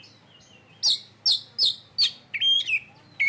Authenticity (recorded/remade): recorded